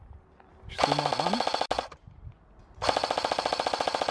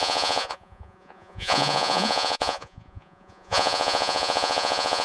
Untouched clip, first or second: first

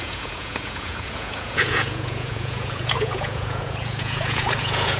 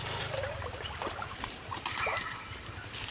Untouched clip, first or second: second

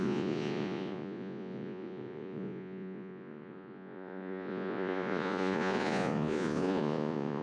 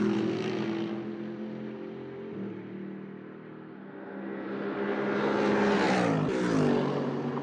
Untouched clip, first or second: second